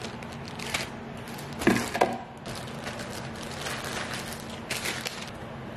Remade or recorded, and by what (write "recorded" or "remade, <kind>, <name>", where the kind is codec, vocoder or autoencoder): recorded